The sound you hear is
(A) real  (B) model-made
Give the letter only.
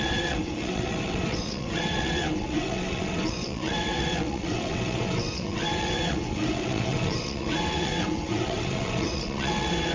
B